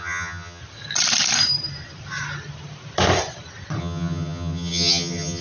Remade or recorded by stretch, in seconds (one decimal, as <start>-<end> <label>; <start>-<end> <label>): 0.0-0.6 remade; 0.6-3.8 recorded; 3.8-5.4 remade